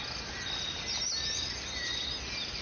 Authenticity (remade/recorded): recorded